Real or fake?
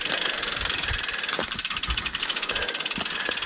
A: real